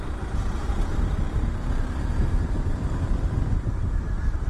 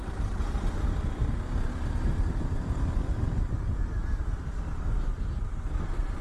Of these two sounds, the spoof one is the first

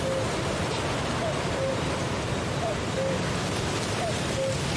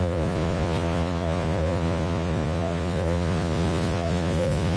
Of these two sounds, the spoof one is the second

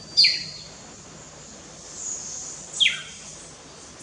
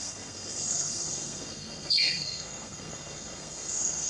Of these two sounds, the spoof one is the second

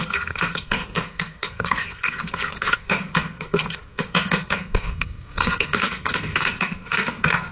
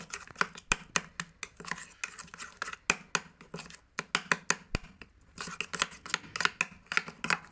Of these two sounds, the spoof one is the first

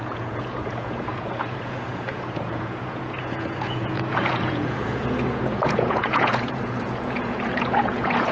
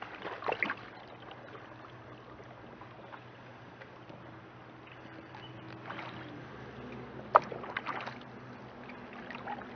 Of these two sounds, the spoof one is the first